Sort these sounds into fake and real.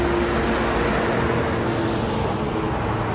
real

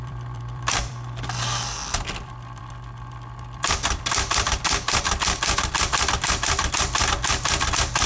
fake